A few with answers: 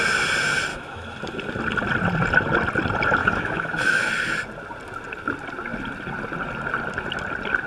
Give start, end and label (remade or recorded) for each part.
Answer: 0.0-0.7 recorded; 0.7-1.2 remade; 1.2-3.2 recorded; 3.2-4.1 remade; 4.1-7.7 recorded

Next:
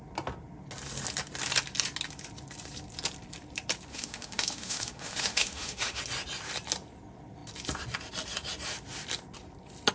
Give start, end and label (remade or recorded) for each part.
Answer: 0.0-3.9 recorded; 3.9-6.0 remade; 6.0-9.9 recorded

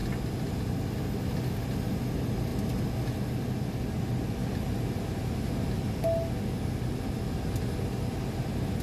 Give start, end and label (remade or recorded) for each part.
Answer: 0.0-8.8 recorded

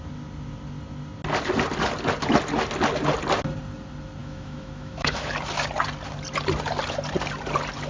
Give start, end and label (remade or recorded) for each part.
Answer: 0.0-4.2 recorded; 4.2-5.3 remade; 5.3-7.9 recorded

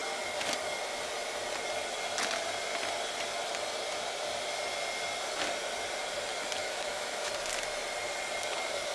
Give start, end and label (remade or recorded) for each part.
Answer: 0.0-6.6 recorded; 6.6-7.3 remade; 7.3-8.9 recorded

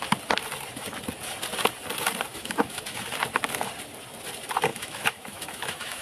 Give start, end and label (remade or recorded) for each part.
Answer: 0.0-2.3 recorded; 2.3-3.0 remade; 3.0-4.7 recorded; 4.7-6.0 remade

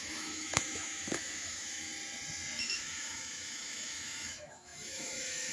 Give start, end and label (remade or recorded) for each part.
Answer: 0.0-1.9 remade; 1.9-2.6 recorded; 2.6-5.5 remade

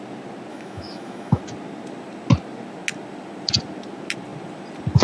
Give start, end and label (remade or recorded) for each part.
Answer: 0.0-0.5 recorded; 0.5-1.4 remade; 1.4-5.0 recorded